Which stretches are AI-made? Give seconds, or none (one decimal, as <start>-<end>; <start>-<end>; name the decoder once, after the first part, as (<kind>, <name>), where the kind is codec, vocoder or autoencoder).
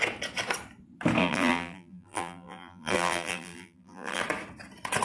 1.2-4.2 (vocoder, BigVGAN v2)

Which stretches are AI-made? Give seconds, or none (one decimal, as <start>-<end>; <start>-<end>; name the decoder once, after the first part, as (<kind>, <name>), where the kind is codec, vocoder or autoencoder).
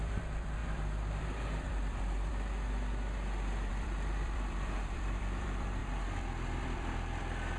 0.0-2.3 (vocoder, BigVGAN v2); 3.7-7.6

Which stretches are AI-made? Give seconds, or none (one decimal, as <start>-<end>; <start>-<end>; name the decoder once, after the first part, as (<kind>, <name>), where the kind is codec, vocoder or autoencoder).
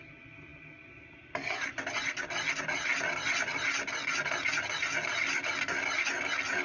none